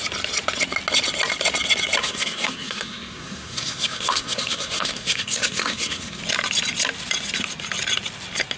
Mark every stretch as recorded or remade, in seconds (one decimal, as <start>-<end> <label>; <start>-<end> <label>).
0.0-2.0 recorded; 2.0-6.2 remade; 6.2-8.6 recorded